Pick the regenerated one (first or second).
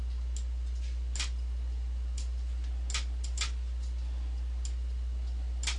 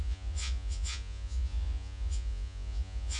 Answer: second